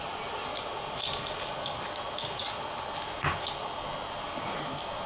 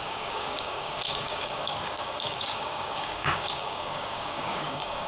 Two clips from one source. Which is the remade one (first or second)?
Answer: second